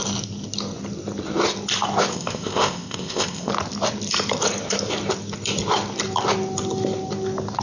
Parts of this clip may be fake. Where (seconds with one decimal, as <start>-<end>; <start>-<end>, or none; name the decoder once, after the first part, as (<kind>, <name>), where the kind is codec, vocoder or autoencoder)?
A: 2.1-3.5 (codec, ZipCodec)